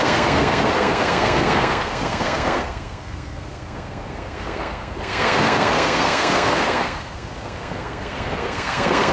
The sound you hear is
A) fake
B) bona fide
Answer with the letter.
A